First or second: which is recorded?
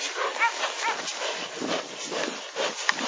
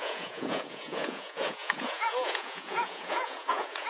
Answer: first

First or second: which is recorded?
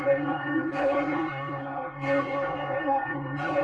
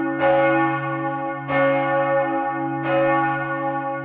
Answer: second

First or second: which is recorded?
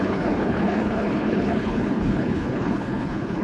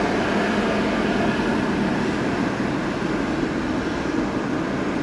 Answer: second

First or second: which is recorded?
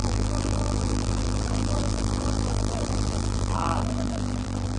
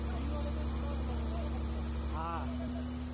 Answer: second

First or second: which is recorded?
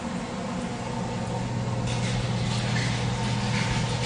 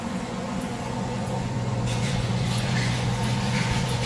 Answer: first